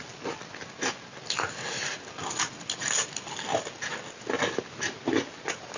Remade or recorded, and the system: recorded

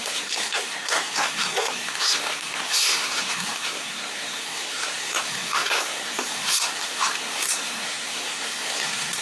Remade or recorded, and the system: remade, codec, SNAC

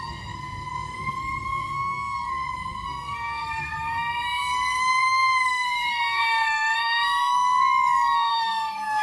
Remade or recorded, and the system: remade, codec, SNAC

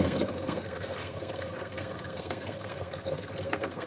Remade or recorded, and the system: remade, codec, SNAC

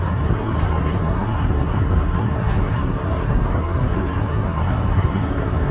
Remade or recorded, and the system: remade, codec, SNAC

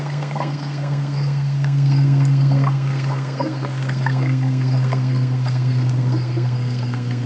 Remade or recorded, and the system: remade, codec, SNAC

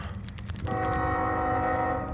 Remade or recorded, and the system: recorded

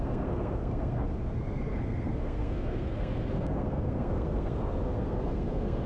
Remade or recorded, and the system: remade, codec, SNAC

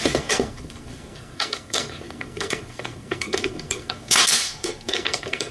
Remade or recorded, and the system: remade, codec, SNAC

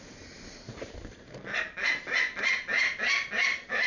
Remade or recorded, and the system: recorded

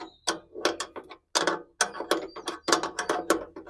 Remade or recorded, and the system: recorded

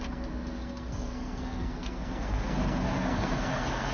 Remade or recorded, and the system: remade, codec, SNAC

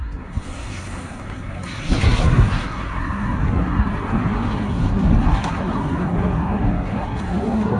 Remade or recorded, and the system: remade, codec, SNAC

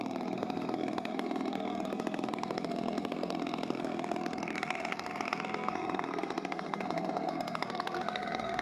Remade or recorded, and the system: remade, codec, SNAC